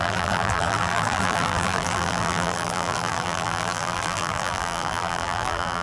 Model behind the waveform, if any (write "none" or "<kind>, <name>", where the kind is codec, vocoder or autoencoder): vocoder, BigVGAN v2